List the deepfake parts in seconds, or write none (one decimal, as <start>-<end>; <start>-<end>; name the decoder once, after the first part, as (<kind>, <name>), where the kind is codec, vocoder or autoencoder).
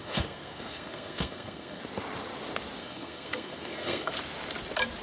0.0-1.8 (codec, SNAC); 2.8-4.1